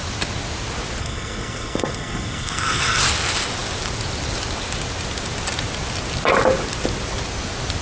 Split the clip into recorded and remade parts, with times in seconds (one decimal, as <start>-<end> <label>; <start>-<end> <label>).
0.0-1.0 recorded; 1.0-3.0 remade; 3.0-7.8 recorded